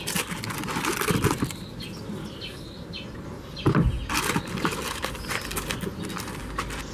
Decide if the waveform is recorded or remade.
recorded